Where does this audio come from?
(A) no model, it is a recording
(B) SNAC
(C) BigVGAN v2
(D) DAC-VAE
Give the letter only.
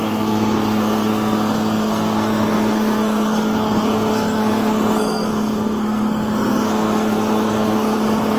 B